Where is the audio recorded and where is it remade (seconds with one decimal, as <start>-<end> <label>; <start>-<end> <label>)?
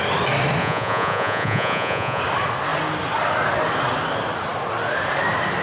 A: 0.0-0.6 recorded; 0.6-2.2 remade; 2.2-5.6 recorded